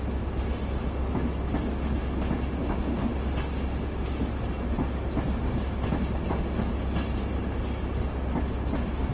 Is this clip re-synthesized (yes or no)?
no